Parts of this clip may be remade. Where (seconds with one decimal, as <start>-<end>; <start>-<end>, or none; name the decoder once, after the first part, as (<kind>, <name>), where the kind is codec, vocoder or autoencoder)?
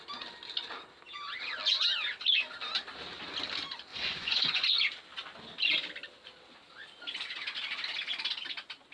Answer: 3.9-4.7 (vocoder, Vocos)